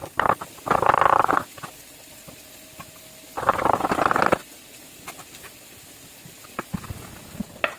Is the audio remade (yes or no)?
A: no